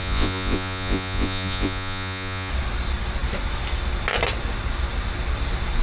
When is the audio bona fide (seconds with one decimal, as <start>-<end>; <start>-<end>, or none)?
2.5-5.8